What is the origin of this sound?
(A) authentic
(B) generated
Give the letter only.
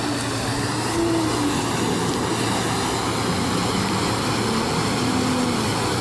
A